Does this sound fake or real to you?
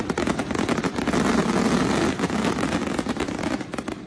real